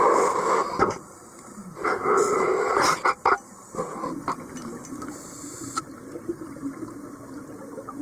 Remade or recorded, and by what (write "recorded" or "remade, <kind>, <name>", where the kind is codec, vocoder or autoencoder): recorded